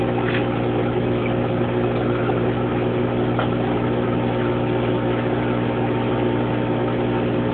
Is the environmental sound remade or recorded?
recorded